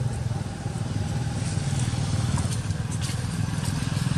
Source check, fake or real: real